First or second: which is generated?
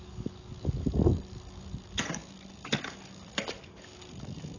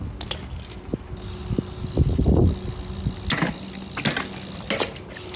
first